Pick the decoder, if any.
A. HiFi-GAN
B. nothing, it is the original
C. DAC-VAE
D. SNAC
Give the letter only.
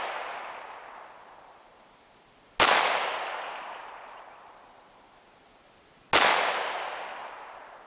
B